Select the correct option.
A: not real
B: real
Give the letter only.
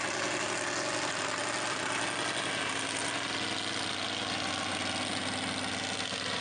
B